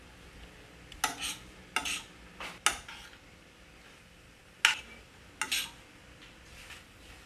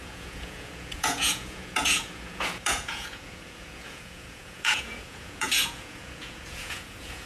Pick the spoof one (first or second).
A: second